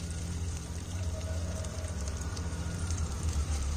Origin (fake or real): fake